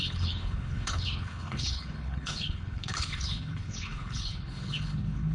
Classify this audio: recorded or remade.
remade